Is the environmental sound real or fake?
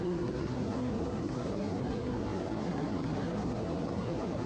fake